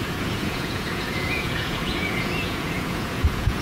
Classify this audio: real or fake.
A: fake